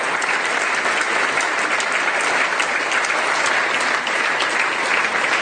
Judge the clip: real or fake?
real